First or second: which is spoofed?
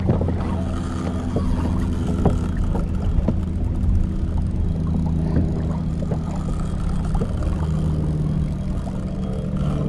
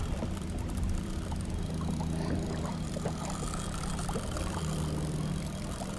second